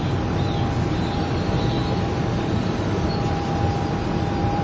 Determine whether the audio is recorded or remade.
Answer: remade